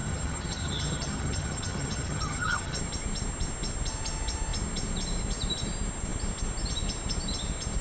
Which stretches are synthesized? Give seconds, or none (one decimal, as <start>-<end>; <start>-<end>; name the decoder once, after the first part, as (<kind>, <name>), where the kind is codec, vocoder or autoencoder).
0.0-2.8 (vocoder, HiFi-GAN)